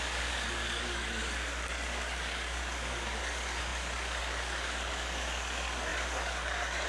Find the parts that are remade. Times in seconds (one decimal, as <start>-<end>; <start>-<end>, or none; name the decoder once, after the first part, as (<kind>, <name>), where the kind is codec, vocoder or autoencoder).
0.0-6.9 (codec, DAC)